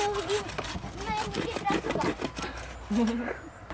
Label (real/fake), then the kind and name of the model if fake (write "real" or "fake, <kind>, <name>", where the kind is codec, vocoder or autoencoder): real